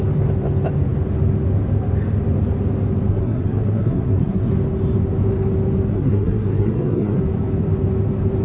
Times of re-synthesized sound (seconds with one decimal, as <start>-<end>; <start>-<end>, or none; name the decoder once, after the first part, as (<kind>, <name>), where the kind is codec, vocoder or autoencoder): 3.1-4.5 (codec, SNAC); 5.9-7.2